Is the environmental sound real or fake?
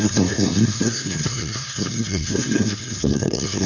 fake